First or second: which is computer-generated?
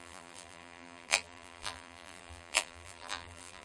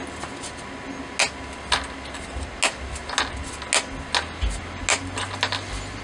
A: first